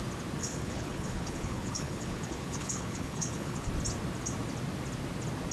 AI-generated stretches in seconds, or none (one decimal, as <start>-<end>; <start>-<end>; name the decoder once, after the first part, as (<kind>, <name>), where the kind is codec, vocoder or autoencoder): 0.4-3.7 (codec, HILCodec)

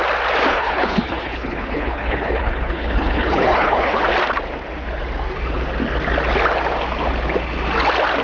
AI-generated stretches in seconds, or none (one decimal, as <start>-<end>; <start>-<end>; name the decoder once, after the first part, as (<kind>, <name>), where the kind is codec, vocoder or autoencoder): 0.5-4.0 (codec, HILCodec)

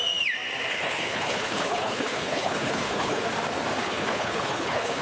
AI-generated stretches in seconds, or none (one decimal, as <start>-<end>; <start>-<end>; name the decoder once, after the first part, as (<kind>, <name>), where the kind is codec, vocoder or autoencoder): 0.7-3.2 (codec, HILCodec); 3.8-5.0

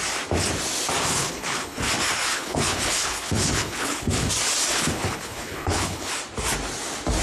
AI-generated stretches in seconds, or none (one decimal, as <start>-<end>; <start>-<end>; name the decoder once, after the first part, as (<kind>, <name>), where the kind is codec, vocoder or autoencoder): 1.1-1.9 (codec, HILCodec); 2.3-4.3; 4.7-6.1

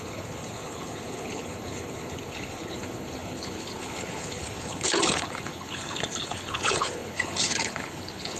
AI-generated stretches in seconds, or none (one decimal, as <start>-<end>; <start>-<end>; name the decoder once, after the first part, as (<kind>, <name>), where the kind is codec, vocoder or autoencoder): 0.0-8.4 (codec, HILCodec)

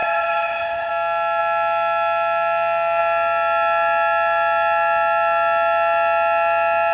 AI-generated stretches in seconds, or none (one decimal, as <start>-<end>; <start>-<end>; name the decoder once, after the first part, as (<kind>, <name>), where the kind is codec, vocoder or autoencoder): 0.0-0.9 (codec, HILCodec)